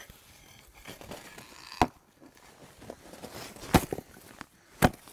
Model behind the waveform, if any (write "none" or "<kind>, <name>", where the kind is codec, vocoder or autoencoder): none